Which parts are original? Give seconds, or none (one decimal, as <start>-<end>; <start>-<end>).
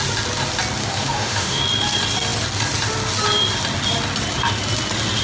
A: 0.0-0.8; 1.6-5.2